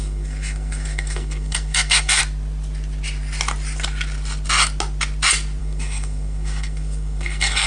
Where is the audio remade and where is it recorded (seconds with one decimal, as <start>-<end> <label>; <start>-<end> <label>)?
0.0-2.2 remade; 2.2-5.6 recorded; 5.6-7.7 remade

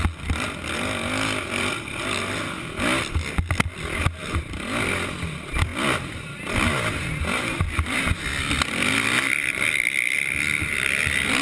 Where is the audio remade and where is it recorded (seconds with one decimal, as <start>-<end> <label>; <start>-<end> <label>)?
0.0-5.7 recorded; 5.7-7.0 remade; 7.0-11.4 recorded

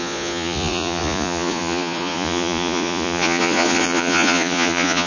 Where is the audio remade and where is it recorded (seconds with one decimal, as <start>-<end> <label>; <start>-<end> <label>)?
0.0-5.1 remade

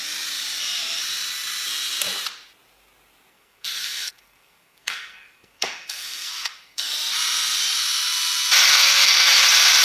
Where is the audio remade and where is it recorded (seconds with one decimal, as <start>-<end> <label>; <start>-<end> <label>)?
0.0-3.3 recorded; 3.3-6.9 remade; 6.9-8.7 recorded; 8.7-9.3 remade; 9.3-9.8 recorded

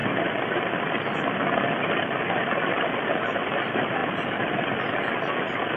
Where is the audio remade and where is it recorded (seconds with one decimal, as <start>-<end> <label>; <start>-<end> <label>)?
0.0-5.8 recorded

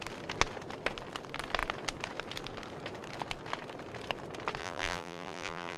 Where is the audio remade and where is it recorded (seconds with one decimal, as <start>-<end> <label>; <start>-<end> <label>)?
0.0-4.6 recorded; 4.6-5.8 remade